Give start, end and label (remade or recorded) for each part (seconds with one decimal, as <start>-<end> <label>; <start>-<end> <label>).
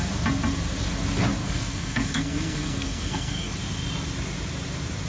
0.0-1.4 recorded; 1.4-3.5 remade; 3.5-5.1 recorded